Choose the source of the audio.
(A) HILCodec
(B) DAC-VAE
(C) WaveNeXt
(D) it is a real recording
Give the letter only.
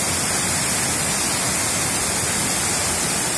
D